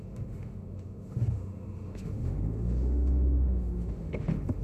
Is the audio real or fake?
fake